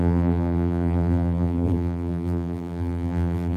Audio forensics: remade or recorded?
remade